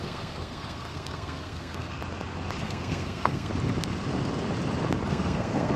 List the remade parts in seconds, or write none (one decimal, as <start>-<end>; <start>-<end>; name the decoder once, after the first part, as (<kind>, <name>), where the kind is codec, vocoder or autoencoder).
0.0-2.0 (codec, SNAC); 2.6-3.5; 5.1-5.8